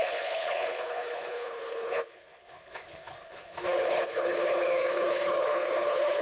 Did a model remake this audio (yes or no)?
yes